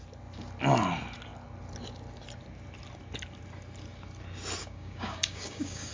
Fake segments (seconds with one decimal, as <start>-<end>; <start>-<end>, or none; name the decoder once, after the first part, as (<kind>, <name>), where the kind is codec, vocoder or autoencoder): 4.6-5.9 (codec, DAC)